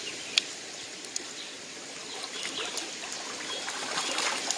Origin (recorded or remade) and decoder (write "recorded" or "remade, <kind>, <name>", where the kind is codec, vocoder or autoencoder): recorded